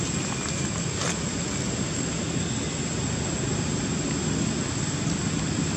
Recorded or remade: recorded